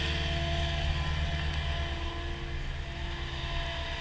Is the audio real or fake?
real